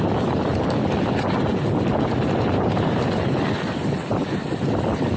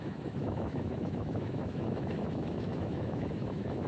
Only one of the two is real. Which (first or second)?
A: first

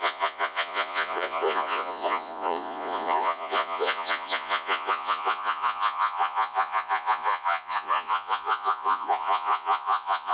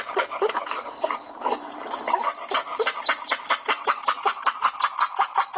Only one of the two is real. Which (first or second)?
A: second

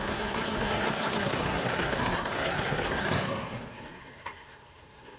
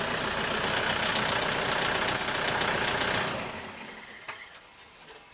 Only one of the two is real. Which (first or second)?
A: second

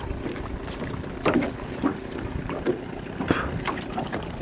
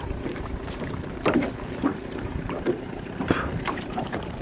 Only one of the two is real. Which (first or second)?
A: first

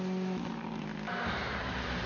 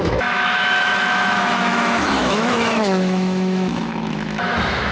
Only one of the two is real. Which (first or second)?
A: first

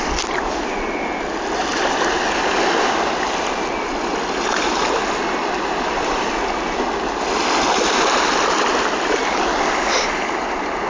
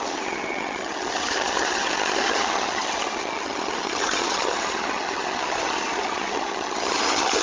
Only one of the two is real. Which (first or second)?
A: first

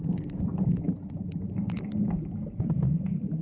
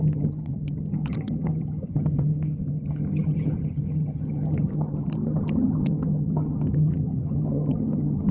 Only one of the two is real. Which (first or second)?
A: first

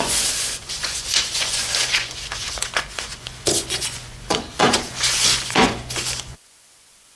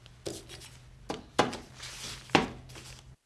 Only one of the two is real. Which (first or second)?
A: second